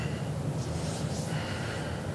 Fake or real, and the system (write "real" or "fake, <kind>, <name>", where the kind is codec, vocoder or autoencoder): real